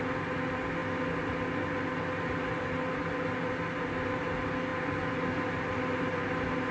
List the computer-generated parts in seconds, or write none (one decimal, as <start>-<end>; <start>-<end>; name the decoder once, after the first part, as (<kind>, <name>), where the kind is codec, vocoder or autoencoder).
none